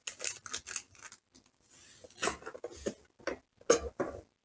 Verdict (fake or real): real